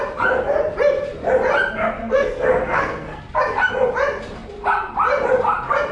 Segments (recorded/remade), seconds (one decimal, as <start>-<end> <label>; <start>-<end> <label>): 0.0-2.0 recorded; 2.0-3.2 remade; 3.2-5.9 recorded